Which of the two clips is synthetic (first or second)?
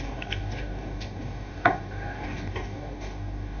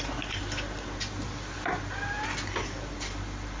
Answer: first